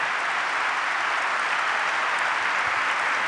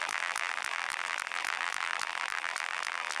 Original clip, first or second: first